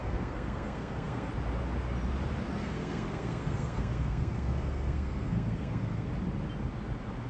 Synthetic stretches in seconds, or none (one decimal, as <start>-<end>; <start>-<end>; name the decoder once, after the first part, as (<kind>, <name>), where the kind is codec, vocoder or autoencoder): 0.0-1.3 (codec, SNAC); 2.6-6.1